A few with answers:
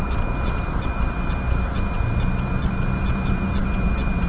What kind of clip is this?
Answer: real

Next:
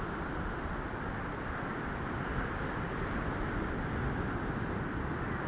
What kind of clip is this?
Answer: real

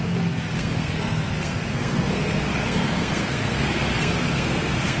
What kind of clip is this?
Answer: fake